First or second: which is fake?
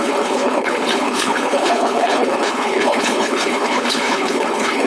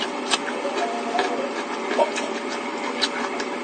first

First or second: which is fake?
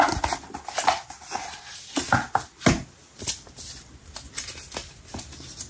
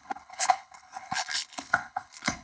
second